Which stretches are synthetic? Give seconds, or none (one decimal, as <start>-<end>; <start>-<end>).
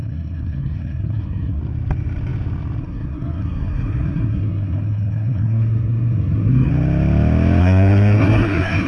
0.0-1.6; 2.8-6.7; 7.6-8.9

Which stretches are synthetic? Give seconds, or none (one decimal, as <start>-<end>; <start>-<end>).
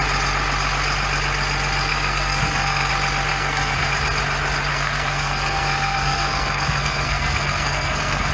1.9-2.9; 3.3-3.9; 4.7-8.3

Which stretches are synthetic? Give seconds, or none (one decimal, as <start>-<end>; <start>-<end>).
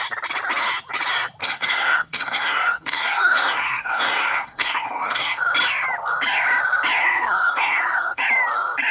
1.4-5.4; 7.0-8.2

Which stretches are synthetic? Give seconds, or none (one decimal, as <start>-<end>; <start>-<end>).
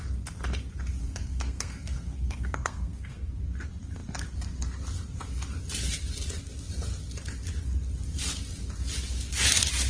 1.0-3.4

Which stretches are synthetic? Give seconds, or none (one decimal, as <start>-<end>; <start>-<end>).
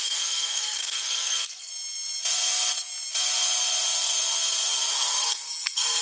0.0-1.7; 4.9-6.0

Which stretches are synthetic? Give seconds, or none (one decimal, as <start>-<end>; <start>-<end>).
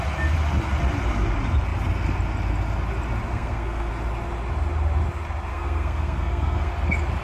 3.3-3.9; 5.5-6.7